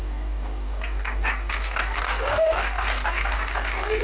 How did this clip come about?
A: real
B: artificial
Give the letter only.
B